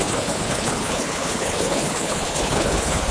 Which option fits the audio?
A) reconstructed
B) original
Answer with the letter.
A